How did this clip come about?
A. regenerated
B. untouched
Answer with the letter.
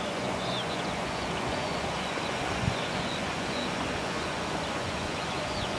A